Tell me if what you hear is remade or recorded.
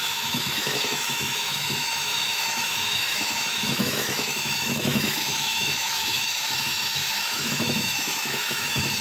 remade